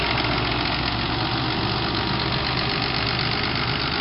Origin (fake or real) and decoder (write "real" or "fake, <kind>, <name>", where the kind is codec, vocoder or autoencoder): real